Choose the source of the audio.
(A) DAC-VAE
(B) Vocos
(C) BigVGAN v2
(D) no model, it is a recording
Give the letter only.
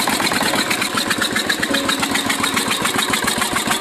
C